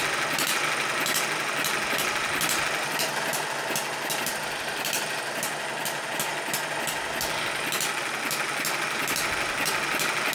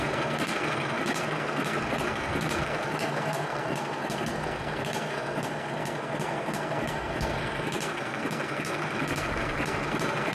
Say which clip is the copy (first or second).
second